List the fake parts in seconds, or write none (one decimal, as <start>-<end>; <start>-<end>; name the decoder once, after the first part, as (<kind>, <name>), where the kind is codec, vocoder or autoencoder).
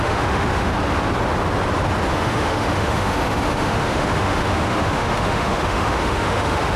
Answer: 0.0-0.7 (autoencoder, DAC-VAE); 2.1-6.8